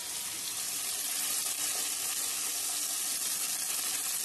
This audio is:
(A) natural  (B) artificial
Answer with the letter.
A